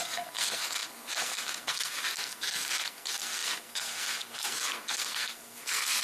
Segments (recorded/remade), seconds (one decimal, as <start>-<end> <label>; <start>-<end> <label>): 0.0-6.0 remade